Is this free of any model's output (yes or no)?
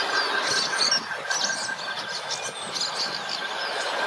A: yes